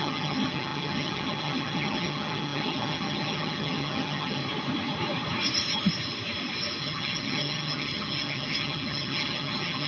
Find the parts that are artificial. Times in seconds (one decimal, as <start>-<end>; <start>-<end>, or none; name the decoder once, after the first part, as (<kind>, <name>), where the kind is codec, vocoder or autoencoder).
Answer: 0.0-4.4 (vocoder, HiFi-GAN); 6.8-9.9